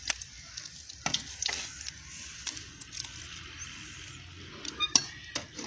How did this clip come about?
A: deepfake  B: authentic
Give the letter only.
B